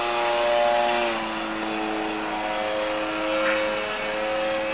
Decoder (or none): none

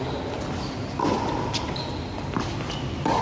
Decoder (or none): vocoder, BigVGAN v2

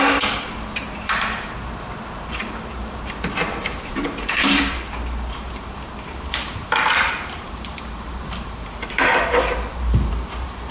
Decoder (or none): vocoder, BigVGAN v2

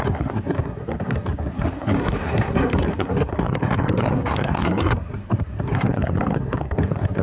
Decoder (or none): codec, SNAC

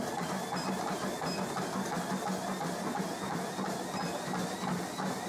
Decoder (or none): none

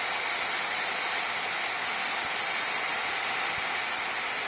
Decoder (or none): none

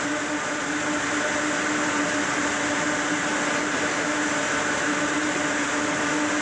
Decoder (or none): none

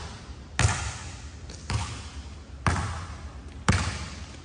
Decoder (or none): none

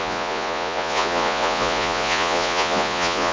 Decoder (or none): vocoder, Vocos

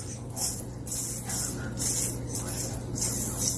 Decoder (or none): none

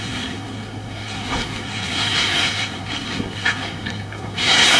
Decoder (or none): codec, SNAC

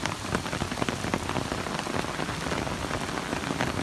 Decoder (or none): none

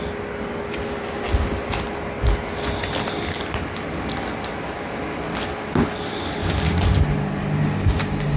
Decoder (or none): none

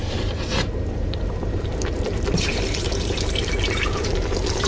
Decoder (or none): vocoder, BigVGAN v2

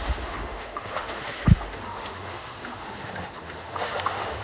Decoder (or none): autoencoder, DAC-VAE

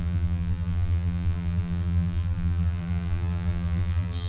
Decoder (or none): vocoder, BigVGAN v2